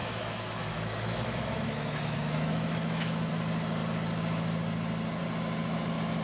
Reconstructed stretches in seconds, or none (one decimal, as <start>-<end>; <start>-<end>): 0.0-3.3